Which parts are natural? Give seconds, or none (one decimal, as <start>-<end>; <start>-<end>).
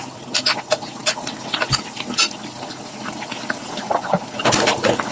0.0-5.1